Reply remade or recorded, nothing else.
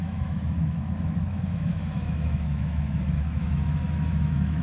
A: remade